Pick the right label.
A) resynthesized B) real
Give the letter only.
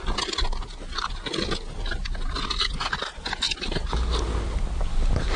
B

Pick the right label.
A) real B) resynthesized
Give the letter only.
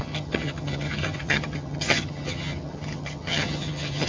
B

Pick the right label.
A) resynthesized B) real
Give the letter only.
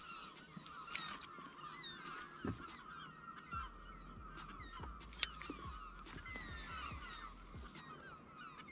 B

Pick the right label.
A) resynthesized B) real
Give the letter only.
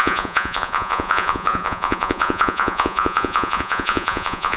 A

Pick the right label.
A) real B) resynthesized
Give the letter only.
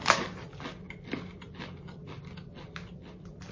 A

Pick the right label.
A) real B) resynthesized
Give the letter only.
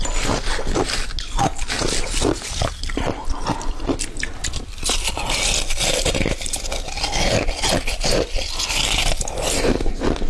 A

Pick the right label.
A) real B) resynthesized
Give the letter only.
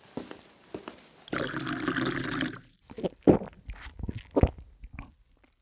A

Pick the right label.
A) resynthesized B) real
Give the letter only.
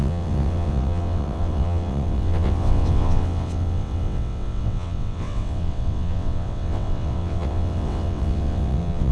A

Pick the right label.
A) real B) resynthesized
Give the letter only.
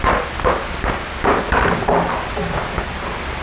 A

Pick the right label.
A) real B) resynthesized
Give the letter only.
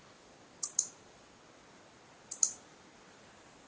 A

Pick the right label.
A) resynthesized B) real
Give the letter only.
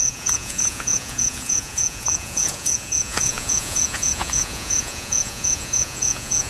A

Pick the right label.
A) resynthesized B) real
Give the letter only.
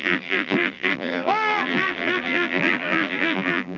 A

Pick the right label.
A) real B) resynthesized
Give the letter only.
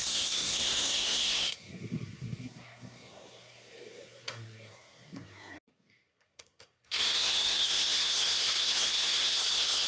B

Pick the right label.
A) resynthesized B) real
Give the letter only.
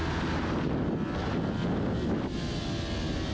B